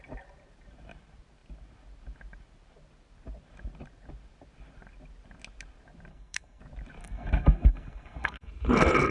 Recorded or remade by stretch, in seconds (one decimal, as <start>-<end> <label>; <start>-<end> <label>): 0.0-6.1 recorded; 6.1-6.6 remade; 6.6-7.0 recorded; 7.0-8.5 remade; 8.5-9.1 recorded